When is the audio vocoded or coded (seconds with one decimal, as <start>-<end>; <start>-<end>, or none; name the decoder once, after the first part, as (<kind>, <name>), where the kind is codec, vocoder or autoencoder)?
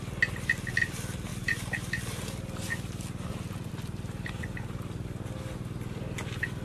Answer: none